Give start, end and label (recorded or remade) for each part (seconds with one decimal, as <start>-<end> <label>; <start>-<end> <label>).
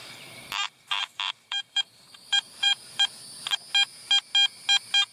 0.0-3.1 remade; 3.1-5.1 recorded